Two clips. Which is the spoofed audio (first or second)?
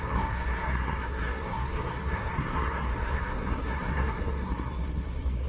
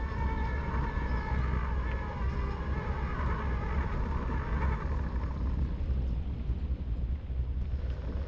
first